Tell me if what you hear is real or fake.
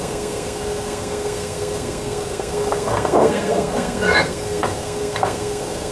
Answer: fake